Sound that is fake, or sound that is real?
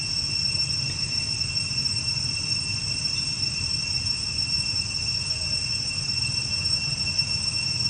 real